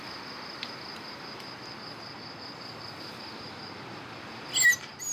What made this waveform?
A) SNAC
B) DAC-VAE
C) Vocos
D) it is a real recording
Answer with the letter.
D